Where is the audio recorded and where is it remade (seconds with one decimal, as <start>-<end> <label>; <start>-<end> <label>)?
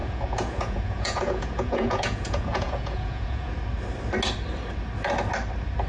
0.0-3.5 remade; 3.5-5.9 recorded